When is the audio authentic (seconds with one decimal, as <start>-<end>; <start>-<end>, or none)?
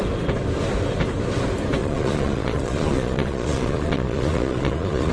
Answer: 0.0-1.8